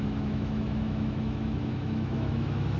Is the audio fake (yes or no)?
yes